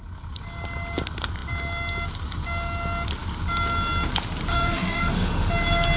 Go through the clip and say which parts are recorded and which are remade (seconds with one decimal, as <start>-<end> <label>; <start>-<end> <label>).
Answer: 0.0-4.5 recorded; 4.5-5.5 remade; 5.5-6.0 recorded